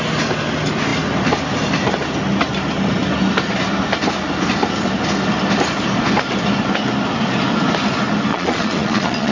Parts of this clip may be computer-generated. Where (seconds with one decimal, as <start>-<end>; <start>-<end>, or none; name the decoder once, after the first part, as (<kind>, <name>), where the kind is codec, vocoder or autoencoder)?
8.3-9.3 (vocoder, Vocos)